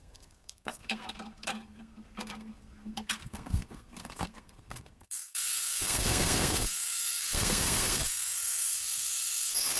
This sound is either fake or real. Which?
fake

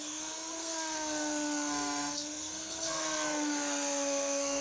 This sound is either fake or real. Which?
fake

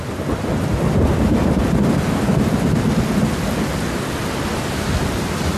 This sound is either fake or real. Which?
real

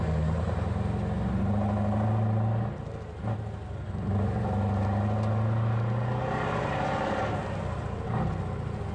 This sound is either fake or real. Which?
real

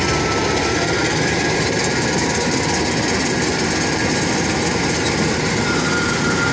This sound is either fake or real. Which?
real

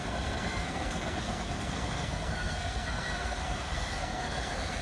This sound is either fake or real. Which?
fake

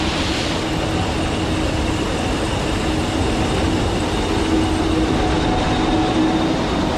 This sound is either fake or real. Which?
real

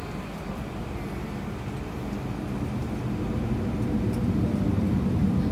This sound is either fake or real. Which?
real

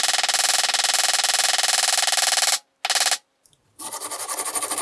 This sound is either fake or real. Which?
real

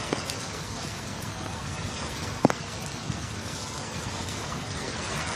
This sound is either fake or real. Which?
fake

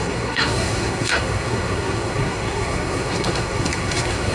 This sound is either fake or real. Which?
fake